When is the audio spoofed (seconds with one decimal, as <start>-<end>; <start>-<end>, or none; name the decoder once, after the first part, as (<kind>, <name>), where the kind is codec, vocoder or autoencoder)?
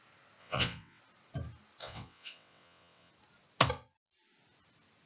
0.4-1.0 (vocoder, WaveNeXt); 1.8-3.1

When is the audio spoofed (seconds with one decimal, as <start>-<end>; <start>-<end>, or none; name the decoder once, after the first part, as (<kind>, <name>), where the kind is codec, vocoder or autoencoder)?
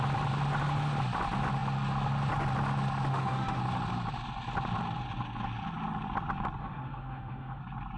3.1-3.6 (autoencoder, DAC-VAE); 6.6-7.6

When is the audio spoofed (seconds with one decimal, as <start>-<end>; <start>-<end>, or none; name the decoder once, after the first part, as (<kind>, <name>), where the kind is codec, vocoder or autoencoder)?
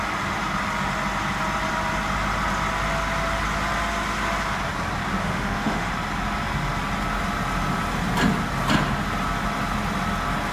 5.2-5.9 (autoencoder, DAC-VAE)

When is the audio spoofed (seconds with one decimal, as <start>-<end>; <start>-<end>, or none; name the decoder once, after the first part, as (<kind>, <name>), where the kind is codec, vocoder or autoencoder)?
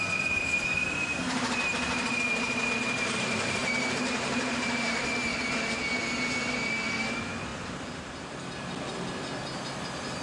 3.6-5.0 (vocoder, BigVGAN v2); 7.5-8.3